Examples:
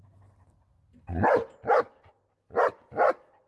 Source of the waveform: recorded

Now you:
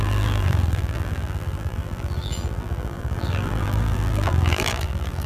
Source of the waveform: remade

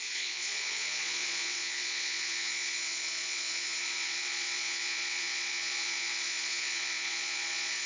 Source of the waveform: remade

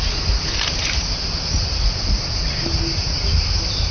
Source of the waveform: recorded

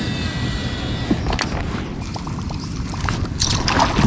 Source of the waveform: recorded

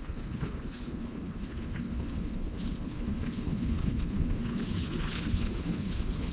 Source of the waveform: remade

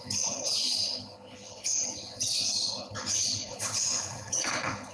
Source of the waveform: remade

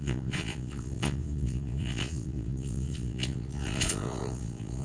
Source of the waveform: remade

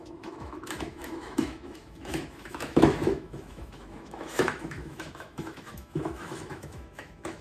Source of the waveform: remade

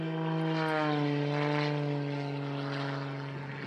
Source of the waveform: recorded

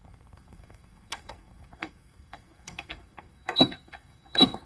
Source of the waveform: remade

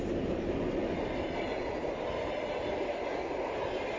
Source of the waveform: recorded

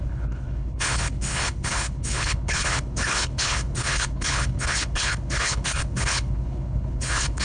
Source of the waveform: remade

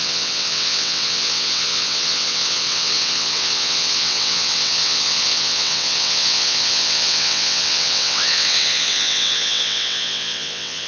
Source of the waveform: remade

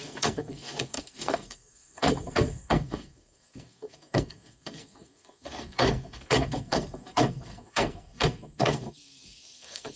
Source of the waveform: remade